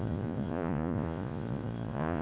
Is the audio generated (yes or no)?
yes